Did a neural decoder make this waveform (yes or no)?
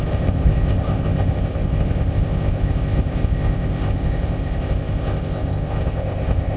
yes